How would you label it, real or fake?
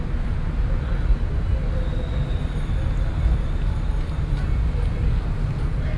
real